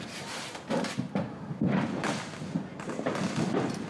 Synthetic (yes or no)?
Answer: yes